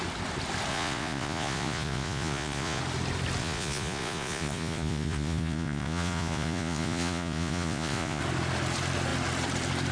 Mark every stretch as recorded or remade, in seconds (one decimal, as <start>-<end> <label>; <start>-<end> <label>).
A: 0.0-0.7 recorded; 0.7-2.8 remade; 2.8-3.4 recorded; 3.4-8.2 remade; 8.2-9.9 recorded